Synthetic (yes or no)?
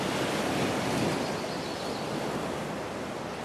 no